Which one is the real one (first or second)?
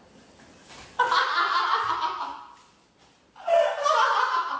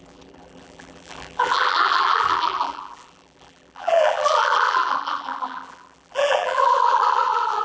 first